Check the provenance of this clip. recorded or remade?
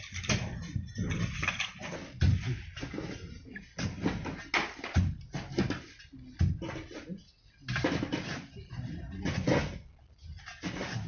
recorded